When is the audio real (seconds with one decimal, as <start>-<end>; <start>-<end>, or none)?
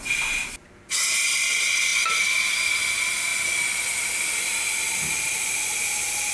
0.0-6.3